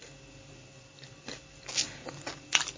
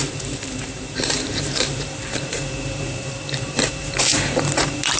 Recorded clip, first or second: first